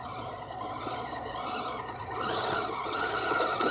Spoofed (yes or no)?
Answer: yes